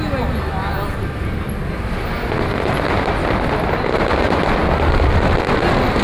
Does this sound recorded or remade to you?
recorded